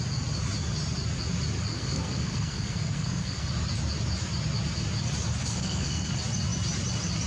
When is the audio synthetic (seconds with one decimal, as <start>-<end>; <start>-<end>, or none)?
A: 1.7-3.5; 5.4-6.1